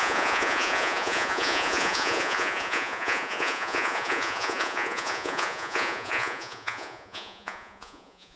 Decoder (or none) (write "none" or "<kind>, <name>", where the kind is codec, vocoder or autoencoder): vocoder, Vocos